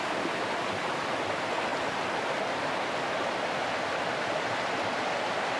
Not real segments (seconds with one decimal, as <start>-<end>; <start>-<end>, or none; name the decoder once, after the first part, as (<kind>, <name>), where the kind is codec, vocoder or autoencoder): none